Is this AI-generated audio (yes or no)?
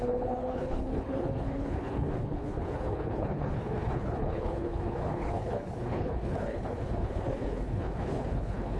yes